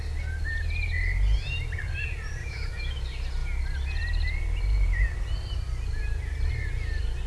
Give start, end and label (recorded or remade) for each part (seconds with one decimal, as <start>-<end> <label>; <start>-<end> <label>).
0.0-2.4 recorded; 2.4-3.0 remade; 3.0-7.3 recorded